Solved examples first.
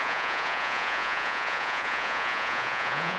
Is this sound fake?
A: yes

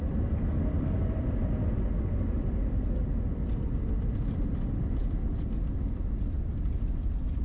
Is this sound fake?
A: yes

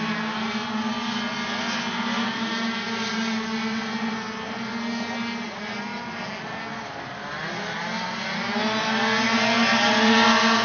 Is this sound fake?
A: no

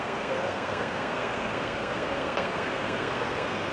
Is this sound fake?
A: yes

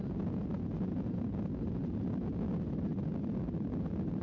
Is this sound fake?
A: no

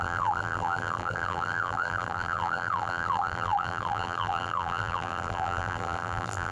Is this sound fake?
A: yes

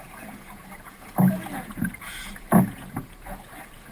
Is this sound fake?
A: yes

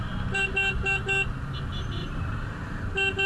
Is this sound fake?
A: no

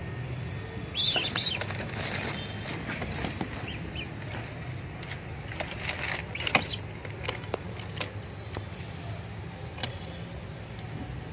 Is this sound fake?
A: no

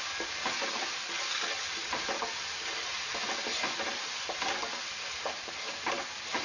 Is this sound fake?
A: no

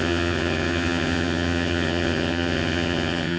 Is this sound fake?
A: yes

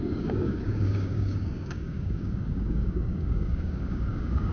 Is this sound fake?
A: yes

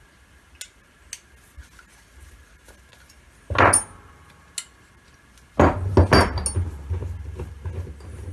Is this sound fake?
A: no